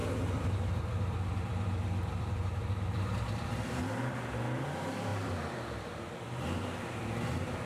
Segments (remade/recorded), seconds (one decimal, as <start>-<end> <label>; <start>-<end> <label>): 0.0-3.8 remade; 3.8-5.1 recorded; 5.1-7.0 remade; 7.0-7.7 recorded